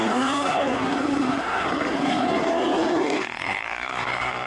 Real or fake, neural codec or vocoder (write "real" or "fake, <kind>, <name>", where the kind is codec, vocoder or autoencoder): fake, codec, SNAC